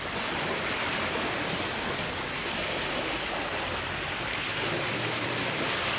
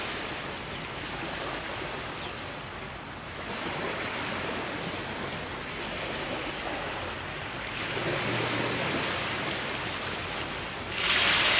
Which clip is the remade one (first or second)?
first